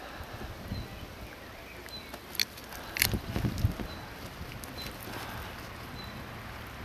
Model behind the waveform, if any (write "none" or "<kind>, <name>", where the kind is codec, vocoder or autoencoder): none